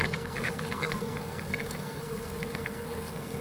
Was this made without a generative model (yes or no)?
no